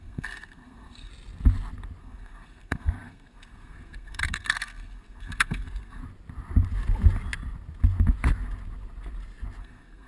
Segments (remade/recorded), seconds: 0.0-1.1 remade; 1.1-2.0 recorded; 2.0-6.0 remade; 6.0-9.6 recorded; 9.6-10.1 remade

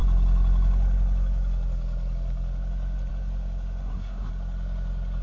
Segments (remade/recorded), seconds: 0.0-3.8 recorded; 3.8-4.3 remade; 4.3-5.2 recorded

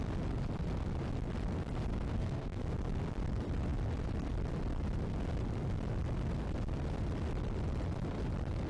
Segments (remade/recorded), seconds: 0.0-1.9 recorded; 1.9-2.6 remade; 2.6-8.7 recorded

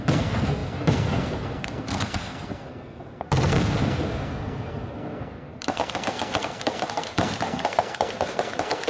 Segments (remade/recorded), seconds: 0.0-8.9 remade

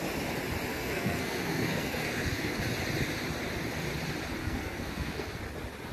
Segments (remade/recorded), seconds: 0.0-0.7 recorded; 0.7-2.6 remade; 2.6-4.4 recorded; 4.4-5.4 remade; 5.4-5.9 recorded

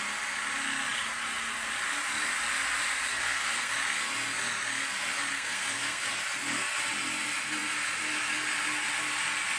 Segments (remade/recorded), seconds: 0.0-3.1 recorded; 3.1-3.7 remade; 3.7-5.3 recorded; 5.3-6.1 remade; 6.1-9.6 recorded